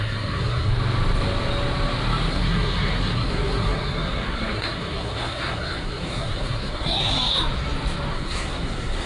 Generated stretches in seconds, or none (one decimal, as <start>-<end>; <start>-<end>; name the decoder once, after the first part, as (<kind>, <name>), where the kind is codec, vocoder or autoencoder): 0.0-0.7 (codec, SNAC); 2.3-7.1; 8.1-9.1